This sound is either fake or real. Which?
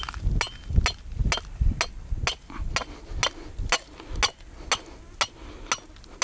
real